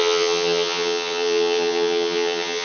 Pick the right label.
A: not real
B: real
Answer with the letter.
A